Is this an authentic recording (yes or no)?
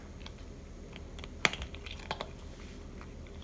yes